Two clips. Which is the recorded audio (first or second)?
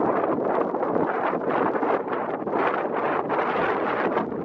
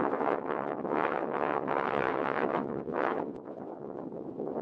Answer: first